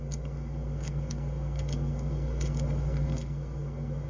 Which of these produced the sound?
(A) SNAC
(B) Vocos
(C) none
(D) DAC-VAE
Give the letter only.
A